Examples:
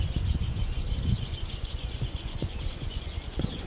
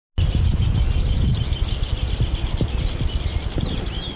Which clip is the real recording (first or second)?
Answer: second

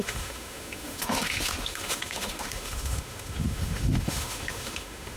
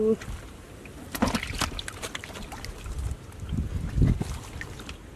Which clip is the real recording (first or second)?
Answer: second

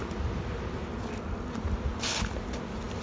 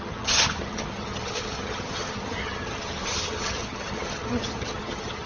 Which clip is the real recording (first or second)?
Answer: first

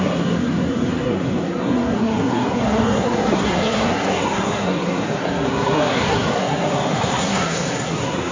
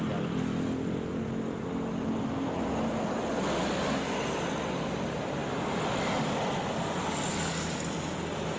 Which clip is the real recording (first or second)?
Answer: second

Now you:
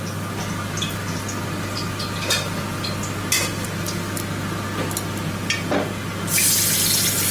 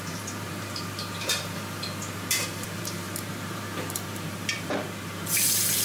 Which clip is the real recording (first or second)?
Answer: first